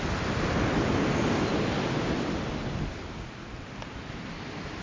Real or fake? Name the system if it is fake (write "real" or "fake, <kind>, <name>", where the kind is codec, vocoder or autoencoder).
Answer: real